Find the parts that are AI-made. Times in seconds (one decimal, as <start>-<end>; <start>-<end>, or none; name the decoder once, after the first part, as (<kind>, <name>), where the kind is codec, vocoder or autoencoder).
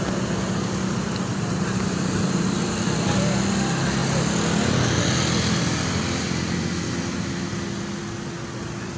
1.3-2.2 (vocoder, BigVGAN v2)